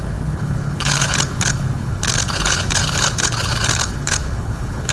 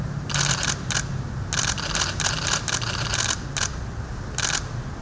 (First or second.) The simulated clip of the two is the first